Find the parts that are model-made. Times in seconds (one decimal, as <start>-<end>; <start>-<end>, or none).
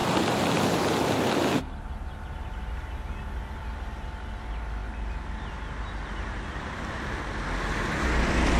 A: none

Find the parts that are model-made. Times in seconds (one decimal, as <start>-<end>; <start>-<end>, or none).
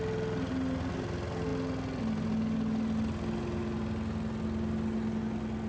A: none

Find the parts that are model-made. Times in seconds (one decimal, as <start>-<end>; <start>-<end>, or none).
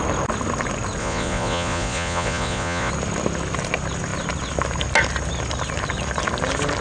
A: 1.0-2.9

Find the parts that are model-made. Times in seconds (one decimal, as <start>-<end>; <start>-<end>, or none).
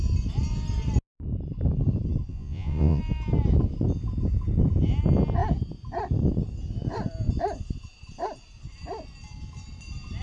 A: 2.3-3.0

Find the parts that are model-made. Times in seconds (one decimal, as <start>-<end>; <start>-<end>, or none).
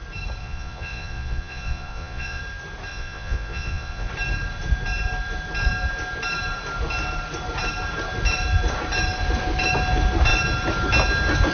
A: 0.4-2.4; 2.9-4.1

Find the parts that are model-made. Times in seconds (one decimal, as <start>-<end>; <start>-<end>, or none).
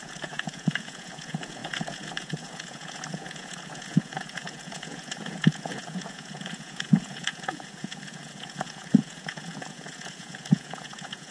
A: 0.0-11.3